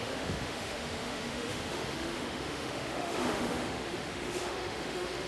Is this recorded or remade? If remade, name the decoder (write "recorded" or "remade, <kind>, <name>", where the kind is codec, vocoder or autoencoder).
remade, autoencoder, DAC-VAE